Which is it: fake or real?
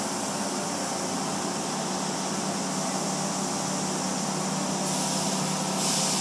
real